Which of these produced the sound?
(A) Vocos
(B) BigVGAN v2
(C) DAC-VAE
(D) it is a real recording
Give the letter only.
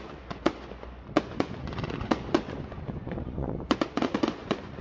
A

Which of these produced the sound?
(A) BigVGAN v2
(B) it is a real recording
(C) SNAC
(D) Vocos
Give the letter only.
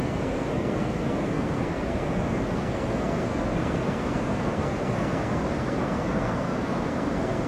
C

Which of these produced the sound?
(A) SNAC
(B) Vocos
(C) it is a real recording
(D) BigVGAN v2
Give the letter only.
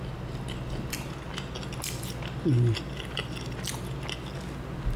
C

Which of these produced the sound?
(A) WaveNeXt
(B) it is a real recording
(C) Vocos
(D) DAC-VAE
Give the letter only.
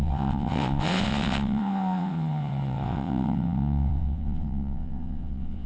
A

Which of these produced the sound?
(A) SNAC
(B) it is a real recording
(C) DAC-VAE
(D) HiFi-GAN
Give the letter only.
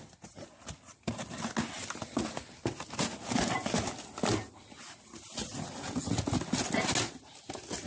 B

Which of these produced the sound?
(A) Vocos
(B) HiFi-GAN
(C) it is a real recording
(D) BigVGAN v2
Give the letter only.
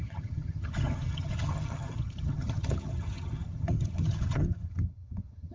B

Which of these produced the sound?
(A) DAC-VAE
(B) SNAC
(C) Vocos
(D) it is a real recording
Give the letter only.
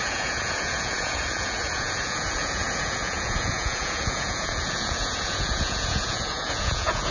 C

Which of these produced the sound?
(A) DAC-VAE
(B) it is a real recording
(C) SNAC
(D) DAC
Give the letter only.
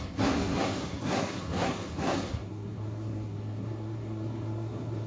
C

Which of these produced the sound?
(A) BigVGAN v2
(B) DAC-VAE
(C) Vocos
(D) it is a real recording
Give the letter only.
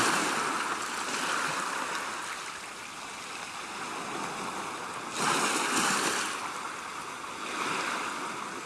D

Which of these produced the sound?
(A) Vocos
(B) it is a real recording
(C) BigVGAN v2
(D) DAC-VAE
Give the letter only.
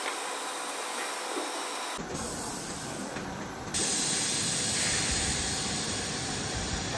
B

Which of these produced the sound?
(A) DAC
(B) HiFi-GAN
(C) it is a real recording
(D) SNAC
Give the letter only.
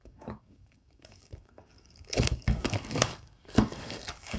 A